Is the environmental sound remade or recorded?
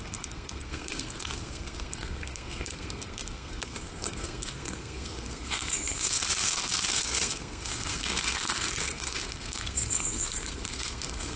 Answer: remade